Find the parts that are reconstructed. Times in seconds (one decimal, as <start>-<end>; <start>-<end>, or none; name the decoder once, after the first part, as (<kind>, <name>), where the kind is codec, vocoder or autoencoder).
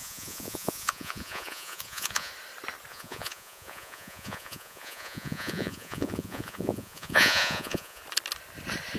0.0-2.3 (vocoder, Vocos); 2.9-8.0